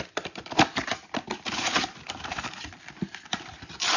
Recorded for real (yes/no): no